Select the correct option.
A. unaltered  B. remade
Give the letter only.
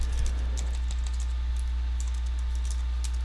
A